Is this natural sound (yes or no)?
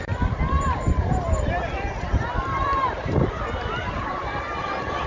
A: no